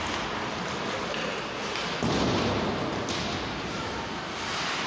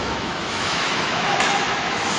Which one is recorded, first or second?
first